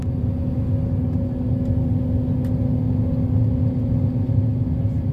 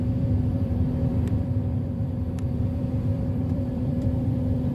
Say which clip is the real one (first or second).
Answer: first